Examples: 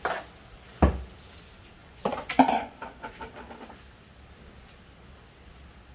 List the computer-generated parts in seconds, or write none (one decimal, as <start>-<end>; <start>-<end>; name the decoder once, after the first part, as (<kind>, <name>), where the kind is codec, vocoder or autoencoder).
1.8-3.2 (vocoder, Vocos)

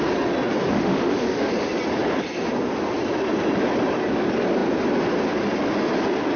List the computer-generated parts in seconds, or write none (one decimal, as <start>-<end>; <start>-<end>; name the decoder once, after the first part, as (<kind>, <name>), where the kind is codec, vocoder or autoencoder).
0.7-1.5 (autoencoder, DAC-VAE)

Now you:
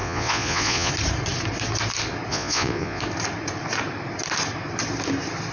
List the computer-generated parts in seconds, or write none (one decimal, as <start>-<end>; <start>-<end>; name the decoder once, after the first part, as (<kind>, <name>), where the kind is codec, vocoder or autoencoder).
0.0-0.9 (vocoder, Vocos); 2.3-3.0

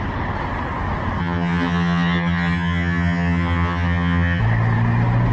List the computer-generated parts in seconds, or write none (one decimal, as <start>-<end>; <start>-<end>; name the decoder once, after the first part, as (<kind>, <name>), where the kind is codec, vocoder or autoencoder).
1.2-4.4 (vocoder, HiFi-GAN)